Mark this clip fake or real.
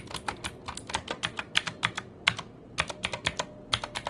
real